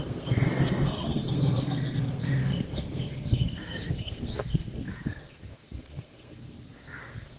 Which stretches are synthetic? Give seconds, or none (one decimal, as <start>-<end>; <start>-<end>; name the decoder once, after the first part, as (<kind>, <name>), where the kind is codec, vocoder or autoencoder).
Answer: 0.0-7.4 (codec, SNAC)